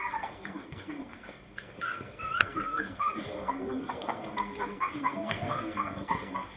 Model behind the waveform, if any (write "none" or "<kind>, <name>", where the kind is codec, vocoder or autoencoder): codec, SNAC